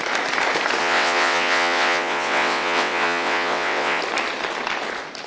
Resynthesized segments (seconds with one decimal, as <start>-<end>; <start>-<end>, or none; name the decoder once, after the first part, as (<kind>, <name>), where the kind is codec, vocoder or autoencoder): 0.8-4.0 (vocoder, WaveNeXt)